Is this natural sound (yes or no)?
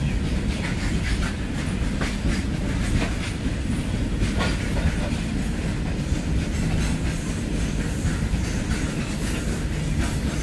yes